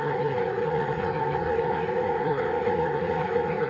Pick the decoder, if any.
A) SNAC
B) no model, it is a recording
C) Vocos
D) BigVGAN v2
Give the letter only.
A